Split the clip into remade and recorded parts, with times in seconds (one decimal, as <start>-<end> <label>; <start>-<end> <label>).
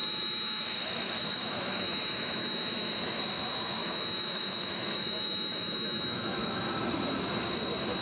0.0-3.2 remade; 3.2-3.8 recorded; 3.8-6.6 remade; 6.6-8.0 recorded